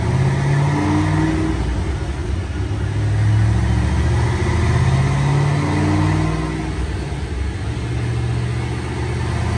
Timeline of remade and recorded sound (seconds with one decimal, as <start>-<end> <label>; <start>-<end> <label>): 0.0-9.6 recorded